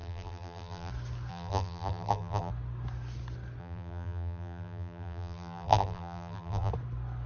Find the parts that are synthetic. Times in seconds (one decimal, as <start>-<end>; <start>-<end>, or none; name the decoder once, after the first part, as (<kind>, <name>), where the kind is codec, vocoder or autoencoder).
0.0-0.9 (vocoder, BigVGAN v2); 1.3-2.5; 3.6-6.7